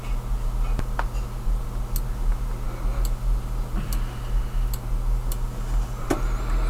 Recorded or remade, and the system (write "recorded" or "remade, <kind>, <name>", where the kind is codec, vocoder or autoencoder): recorded